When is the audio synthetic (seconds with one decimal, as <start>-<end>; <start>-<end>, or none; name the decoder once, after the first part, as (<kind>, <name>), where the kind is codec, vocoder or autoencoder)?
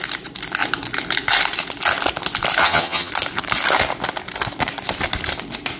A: 2.6-3.1 (vocoder, HiFi-GAN)